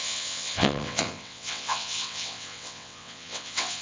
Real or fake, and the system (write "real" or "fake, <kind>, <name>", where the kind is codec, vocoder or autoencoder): fake, vocoder, WaveNeXt